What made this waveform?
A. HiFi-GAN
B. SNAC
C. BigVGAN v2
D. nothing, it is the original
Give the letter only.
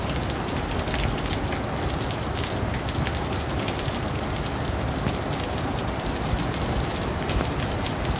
D